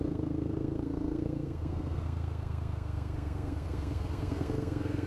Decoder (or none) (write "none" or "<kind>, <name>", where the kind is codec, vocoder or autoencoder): codec, SNAC